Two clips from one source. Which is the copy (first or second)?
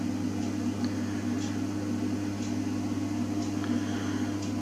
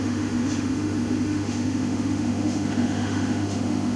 second